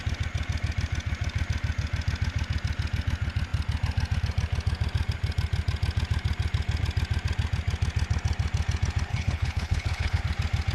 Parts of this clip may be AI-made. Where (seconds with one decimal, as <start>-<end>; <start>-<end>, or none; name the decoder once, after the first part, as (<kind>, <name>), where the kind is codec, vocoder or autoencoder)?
9.1-10.2 (codec, HILCodec)

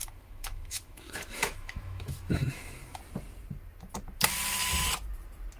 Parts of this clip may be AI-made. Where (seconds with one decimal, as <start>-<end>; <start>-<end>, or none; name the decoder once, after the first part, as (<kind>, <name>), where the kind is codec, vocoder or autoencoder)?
0.0-3.0 (autoencoder, DAC-VAE)